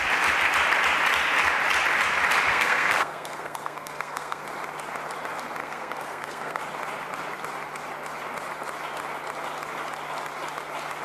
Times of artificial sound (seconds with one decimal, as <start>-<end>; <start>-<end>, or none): 2.5-4.4; 5.6-6.6